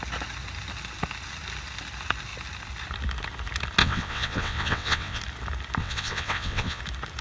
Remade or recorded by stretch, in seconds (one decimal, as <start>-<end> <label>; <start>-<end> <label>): 0.0-3.8 recorded; 3.8-5.2 remade; 5.2-5.8 recorded; 5.8-6.8 remade; 6.8-7.2 recorded